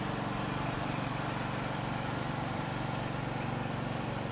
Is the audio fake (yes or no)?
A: yes